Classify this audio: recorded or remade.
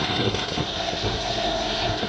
remade